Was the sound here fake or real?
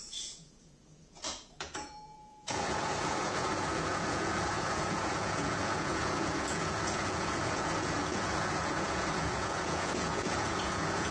fake